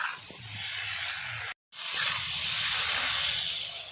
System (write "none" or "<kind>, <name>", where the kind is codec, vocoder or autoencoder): none